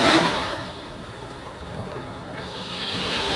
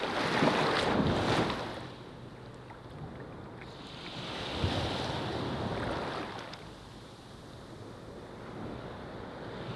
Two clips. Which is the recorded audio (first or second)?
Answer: second